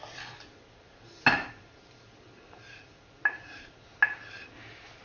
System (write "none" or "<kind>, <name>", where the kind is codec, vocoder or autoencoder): none